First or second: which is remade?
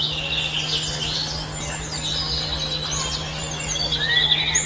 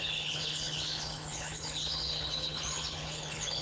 second